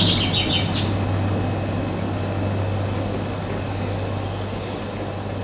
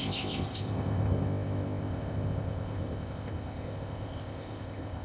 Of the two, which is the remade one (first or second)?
second